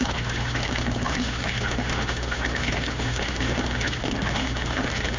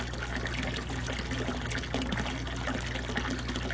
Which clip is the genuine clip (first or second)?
second